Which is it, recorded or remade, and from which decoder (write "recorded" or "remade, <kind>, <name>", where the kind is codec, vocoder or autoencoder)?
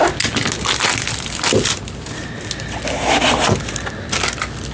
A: recorded